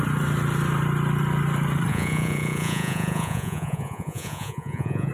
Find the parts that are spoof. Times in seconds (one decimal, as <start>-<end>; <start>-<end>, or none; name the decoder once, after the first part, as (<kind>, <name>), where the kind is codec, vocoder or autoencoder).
1.9-5.1 (vocoder, Vocos)